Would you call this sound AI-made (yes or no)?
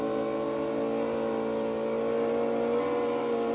no